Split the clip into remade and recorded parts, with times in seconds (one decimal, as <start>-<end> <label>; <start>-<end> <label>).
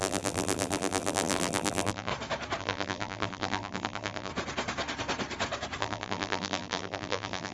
0.0-2.1 remade; 2.1-2.6 recorded; 2.6-4.3 remade; 4.3-5.8 recorded; 5.8-7.5 remade